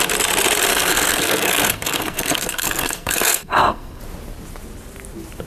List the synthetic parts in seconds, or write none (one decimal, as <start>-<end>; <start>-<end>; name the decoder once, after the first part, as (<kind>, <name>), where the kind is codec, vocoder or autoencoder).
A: 0.7-4.0 (codec, SNAC)